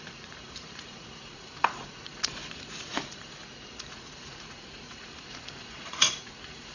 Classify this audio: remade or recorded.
remade